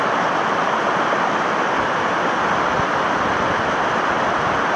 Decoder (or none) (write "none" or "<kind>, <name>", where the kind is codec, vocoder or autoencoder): none